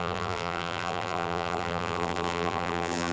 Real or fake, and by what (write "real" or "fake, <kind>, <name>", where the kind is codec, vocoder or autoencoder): fake, vocoder, BigVGAN v2